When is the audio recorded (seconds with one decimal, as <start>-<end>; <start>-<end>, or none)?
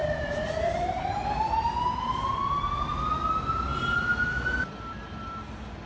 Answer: 1.4-5.9